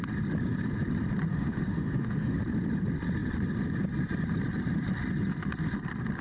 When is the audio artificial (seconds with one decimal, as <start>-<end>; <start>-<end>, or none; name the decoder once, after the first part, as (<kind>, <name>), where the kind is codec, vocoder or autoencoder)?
1.3-2.4 (autoencoder, DAC-VAE)